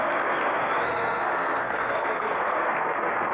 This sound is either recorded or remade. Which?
remade